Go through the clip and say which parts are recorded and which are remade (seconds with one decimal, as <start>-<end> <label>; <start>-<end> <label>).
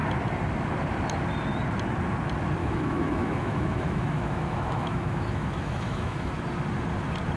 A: 0.0-2.6 recorded; 2.6-6.3 remade; 6.3-7.4 recorded